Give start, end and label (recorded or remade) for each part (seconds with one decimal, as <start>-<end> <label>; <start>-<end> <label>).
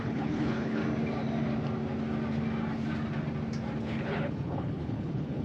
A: 0.0-0.8 remade; 0.8-3.8 recorded; 3.8-5.4 remade